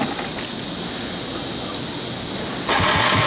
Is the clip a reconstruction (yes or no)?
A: no